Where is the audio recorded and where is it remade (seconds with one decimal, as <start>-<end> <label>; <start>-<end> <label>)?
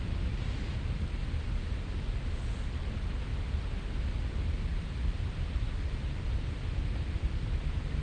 0.0-8.0 recorded